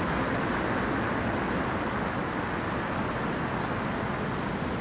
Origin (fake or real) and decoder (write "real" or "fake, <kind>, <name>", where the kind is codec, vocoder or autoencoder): real